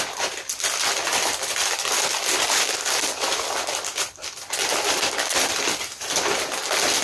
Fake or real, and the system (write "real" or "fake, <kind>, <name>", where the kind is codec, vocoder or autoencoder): fake, vocoder, BigVGAN v2